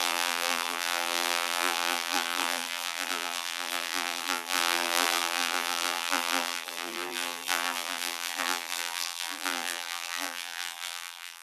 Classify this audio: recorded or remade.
remade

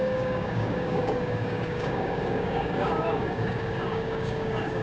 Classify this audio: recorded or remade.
remade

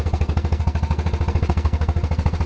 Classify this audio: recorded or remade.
remade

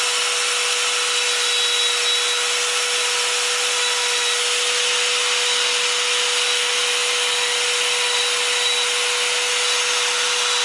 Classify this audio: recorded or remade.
recorded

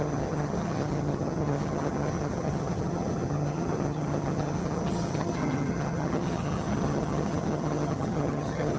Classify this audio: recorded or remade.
remade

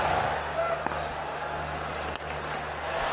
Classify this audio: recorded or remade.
recorded